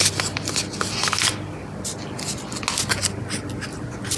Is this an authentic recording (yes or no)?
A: yes